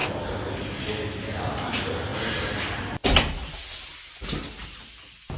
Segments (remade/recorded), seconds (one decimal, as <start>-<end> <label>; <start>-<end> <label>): 0.0-5.4 recorded